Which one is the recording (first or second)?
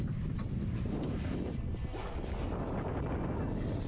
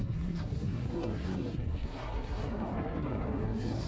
first